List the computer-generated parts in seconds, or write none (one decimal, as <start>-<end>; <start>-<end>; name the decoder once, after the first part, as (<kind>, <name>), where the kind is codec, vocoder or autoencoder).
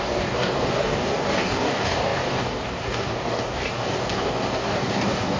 0.0-5.4 (codec, DAC)